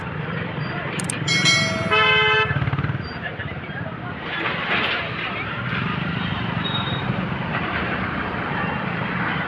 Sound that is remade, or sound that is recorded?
remade